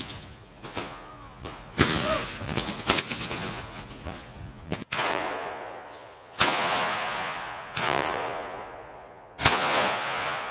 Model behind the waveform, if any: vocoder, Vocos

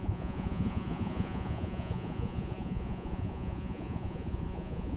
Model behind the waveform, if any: vocoder, Vocos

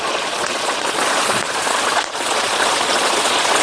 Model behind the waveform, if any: vocoder, Vocos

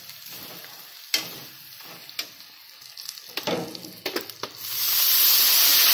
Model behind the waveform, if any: none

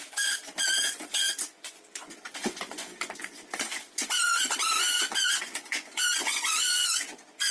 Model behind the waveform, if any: vocoder, Vocos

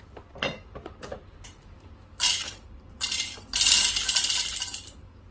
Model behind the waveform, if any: none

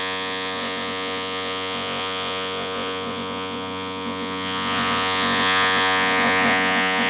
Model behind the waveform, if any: vocoder, Vocos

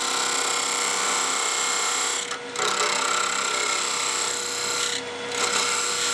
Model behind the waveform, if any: none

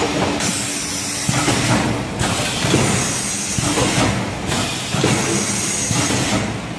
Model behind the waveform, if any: none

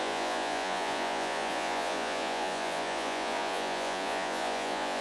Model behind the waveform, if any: vocoder, Vocos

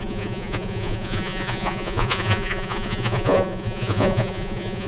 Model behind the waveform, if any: vocoder, Vocos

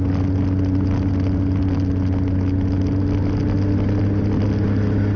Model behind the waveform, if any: none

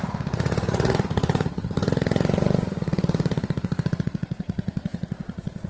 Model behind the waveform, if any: vocoder, Vocos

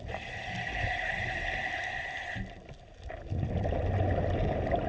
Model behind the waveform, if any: none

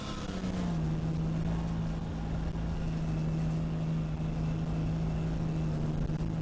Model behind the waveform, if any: none